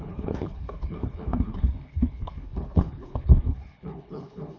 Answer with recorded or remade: remade